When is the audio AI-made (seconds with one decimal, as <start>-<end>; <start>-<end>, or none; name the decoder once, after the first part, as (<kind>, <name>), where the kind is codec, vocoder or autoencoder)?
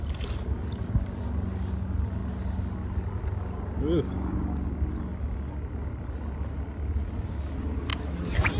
none